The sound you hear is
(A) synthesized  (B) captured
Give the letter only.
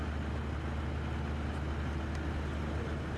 B